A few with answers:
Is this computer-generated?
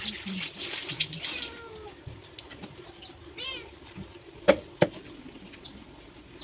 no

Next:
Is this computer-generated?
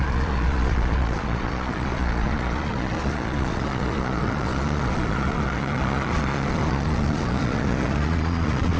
yes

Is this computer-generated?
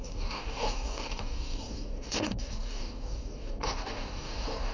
yes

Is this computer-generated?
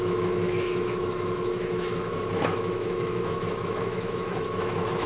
yes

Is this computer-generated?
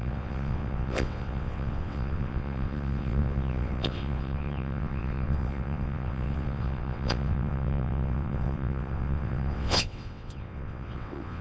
yes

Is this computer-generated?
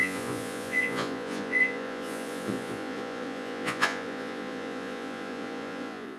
yes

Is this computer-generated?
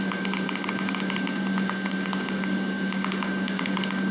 yes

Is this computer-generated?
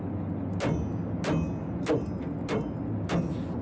no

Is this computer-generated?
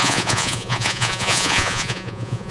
yes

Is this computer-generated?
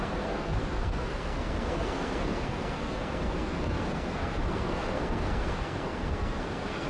yes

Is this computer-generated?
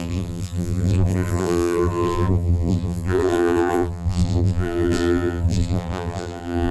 yes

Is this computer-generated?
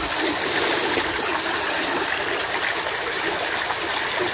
no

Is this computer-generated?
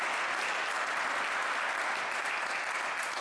no